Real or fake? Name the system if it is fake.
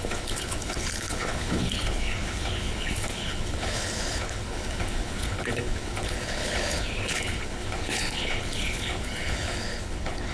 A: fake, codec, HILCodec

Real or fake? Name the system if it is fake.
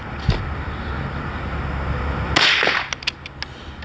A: real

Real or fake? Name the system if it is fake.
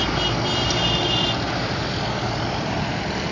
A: real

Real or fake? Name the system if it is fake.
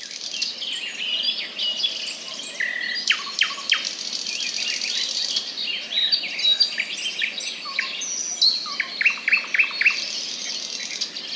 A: real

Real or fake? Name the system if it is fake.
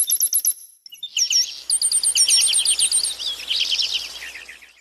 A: real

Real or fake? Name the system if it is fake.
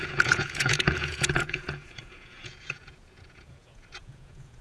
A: fake, vocoder, Vocos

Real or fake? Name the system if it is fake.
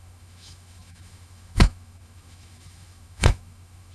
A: fake, autoencoder, DAC-VAE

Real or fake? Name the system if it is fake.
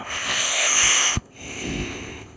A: fake, codec, ZipCodec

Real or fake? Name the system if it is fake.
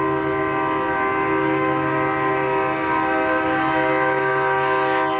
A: real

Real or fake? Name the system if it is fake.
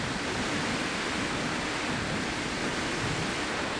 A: real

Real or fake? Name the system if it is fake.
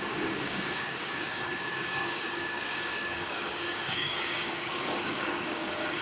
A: fake, codec, DAC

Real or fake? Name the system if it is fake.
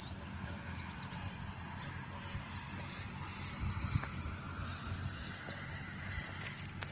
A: real